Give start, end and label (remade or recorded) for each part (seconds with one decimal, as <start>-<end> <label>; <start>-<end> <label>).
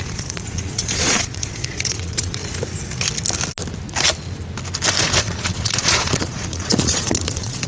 0.0-2.4 remade; 2.4-5.0 recorded; 5.0-7.7 remade